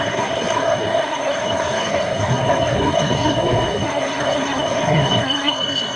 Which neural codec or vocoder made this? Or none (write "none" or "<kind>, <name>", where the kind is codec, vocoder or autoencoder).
codec, SNAC